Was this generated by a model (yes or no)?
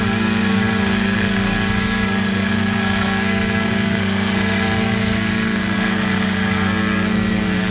yes